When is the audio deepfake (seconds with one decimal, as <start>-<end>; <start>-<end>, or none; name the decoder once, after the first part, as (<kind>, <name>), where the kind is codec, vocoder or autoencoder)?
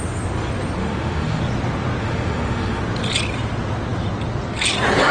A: 0.8-1.4 (autoencoder, DAC-VAE); 2.0-2.8